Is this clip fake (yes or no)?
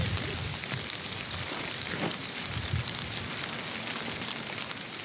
yes